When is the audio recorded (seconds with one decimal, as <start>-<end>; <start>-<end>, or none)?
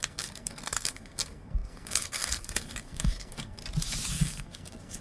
3.6-4.1